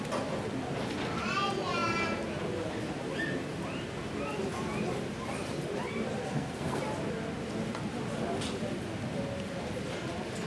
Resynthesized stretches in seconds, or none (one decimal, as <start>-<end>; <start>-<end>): 6.2-6.8